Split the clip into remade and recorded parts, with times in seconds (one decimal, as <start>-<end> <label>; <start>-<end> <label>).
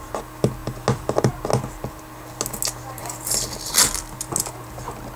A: 0.0-5.2 recorded